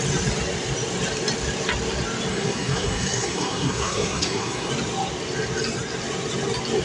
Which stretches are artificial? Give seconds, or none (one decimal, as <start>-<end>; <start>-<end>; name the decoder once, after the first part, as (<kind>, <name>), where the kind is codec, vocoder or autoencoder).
2.3-4.7 (codec, SNAC)